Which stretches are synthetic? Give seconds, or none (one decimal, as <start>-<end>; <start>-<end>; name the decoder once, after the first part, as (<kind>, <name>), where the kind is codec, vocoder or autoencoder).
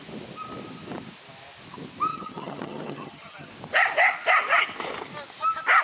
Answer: 2.1-3.5 (vocoder, HiFi-GAN)